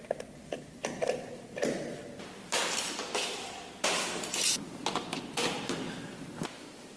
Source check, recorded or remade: recorded